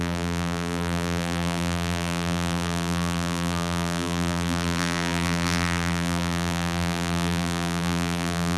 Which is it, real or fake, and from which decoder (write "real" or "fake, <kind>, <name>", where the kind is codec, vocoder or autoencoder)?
fake, vocoder, BigVGAN v2